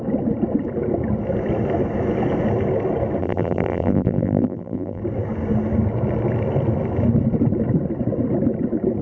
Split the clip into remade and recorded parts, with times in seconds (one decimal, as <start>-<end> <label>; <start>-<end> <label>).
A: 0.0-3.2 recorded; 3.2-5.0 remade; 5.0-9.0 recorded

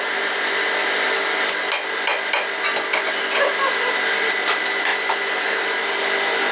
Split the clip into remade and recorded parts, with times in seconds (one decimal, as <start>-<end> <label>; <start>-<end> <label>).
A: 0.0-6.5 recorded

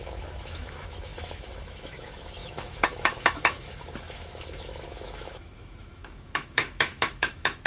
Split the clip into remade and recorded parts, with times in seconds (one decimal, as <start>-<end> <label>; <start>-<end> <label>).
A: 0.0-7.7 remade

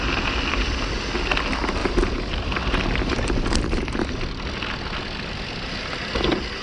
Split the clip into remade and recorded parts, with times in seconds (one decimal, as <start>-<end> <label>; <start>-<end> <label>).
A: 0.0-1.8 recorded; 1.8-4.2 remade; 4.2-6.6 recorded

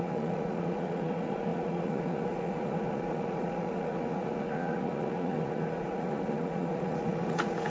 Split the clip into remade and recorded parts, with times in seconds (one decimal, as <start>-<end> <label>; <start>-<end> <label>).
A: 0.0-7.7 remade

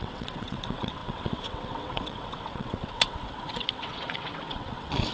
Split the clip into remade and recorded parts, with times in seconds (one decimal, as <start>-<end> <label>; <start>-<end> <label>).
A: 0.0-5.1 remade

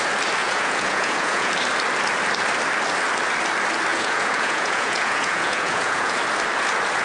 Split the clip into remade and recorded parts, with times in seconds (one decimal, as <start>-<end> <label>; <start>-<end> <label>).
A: 0.0-0.4 recorded; 0.4-1.5 remade; 1.5-3.9 recorded; 3.9-6.2 remade; 6.2-7.0 recorded

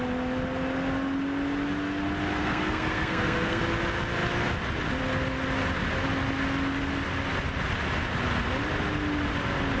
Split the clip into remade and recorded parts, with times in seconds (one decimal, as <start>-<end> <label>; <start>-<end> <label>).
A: 0.0-2.4 recorded; 2.4-3.6 remade; 3.6-9.8 recorded